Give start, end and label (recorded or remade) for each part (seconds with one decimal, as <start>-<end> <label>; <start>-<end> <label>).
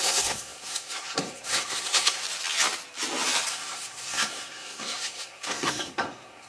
0.0-2.2 remade; 2.2-3.5 recorded; 3.5-6.5 remade